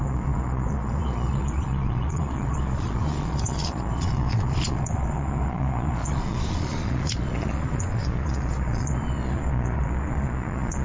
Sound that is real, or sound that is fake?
fake